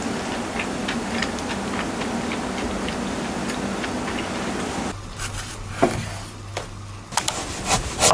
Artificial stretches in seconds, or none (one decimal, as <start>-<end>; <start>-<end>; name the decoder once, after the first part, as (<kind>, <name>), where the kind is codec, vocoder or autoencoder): none